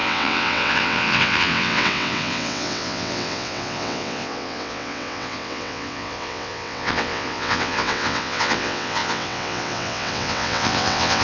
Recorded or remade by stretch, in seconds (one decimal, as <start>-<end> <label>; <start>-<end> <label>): 0.0-11.2 remade